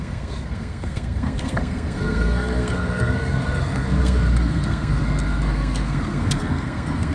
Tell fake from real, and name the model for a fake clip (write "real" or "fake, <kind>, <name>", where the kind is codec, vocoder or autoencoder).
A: fake, codec, SNAC